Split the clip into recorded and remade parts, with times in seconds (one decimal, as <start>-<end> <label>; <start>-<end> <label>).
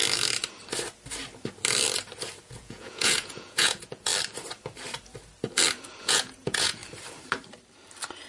0.0-2.4 recorded; 2.4-4.1 remade; 4.1-6.0 recorded; 6.0-6.8 remade; 6.8-8.3 recorded